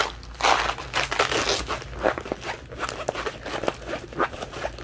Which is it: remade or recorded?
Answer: recorded